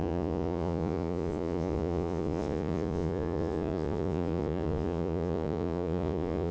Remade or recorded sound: remade